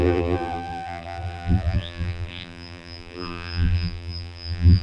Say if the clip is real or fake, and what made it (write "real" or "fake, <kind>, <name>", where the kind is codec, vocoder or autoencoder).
fake, vocoder, BigVGAN v2